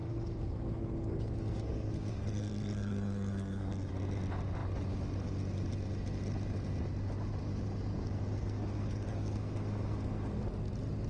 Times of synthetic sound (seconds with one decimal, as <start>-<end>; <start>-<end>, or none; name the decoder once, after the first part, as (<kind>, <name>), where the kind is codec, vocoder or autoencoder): 0.0-3.9 (codec, SNAC); 7.9-10.4